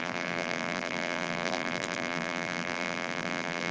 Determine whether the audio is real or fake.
fake